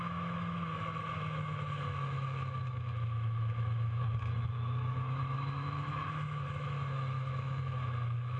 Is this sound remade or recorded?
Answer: remade